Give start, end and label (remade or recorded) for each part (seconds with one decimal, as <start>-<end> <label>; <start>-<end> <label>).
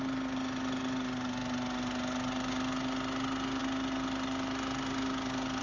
0.0-5.6 recorded